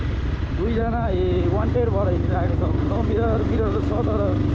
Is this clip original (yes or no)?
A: yes